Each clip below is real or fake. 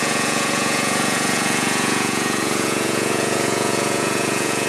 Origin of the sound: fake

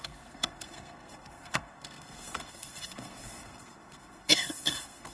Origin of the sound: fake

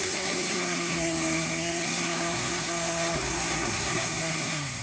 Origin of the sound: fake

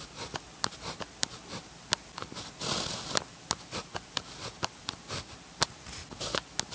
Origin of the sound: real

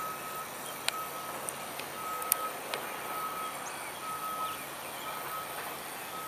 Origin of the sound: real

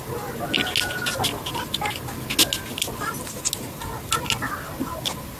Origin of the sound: real